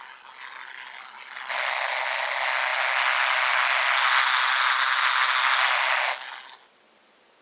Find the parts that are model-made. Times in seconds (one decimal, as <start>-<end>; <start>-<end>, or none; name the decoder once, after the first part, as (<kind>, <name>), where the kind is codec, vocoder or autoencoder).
none